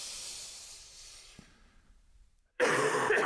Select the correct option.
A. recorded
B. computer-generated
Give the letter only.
B